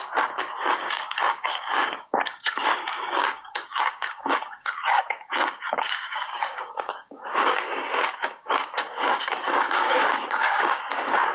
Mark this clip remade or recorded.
remade